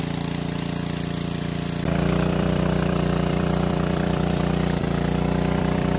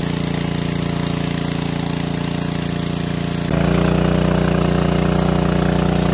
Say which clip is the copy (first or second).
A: first